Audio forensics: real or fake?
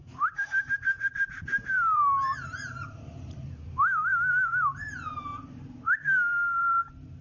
fake